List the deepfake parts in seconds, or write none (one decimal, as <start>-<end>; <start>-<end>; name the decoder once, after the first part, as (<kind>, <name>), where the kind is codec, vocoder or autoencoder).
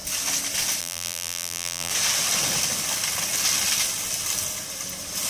0.8-1.9 (vocoder, BigVGAN v2)